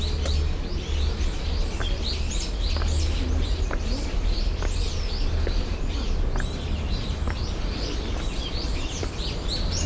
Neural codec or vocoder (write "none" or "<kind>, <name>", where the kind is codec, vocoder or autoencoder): none